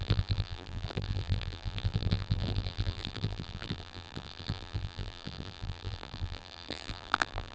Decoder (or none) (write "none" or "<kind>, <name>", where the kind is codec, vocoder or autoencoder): vocoder, BigVGAN v2